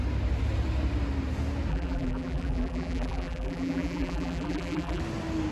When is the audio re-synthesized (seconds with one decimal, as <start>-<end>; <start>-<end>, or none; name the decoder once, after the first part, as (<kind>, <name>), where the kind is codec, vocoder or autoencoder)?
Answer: 1.7-5.0 (vocoder, BigVGAN v2)